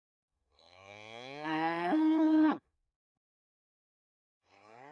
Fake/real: fake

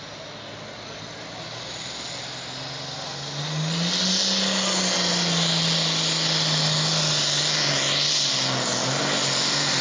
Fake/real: real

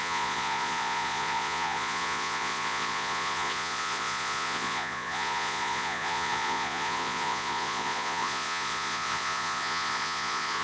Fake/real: fake